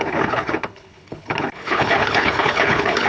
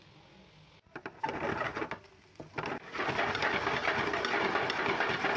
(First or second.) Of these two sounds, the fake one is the first